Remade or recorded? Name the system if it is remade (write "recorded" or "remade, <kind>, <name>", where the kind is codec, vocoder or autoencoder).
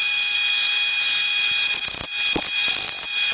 recorded